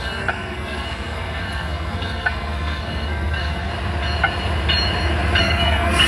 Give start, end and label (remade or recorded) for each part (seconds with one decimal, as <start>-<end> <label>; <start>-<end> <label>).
0.0-3.7 remade; 3.7-5.4 recorded; 5.4-6.1 remade